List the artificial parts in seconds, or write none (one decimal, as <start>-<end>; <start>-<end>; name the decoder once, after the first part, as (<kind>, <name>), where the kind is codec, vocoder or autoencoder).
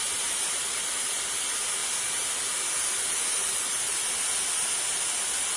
none